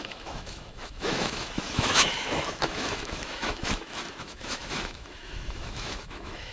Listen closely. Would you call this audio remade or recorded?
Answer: remade